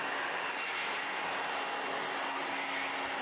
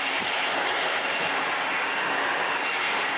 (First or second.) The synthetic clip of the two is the second